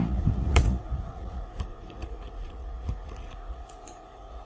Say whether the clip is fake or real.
fake